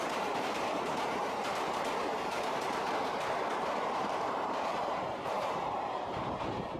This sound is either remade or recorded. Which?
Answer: remade